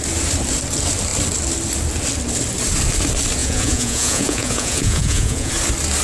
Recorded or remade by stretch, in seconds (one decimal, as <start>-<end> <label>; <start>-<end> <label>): 0.0-3.4 recorded; 3.4-5.5 remade; 5.5-6.0 recorded